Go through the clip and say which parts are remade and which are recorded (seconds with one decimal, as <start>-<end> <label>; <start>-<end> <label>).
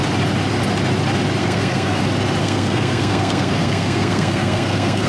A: 0.0-1.4 recorded; 1.4-2.0 remade; 2.0-2.4 recorded; 2.4-5.1 remade